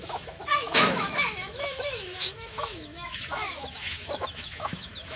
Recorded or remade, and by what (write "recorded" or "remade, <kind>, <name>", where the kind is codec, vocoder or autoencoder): remade, autoencoder, DAC-VAE